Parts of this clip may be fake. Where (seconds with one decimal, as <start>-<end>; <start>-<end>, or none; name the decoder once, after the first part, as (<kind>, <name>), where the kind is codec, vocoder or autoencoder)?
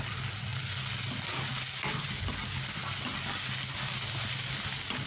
none